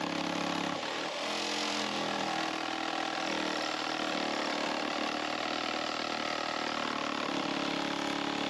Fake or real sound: real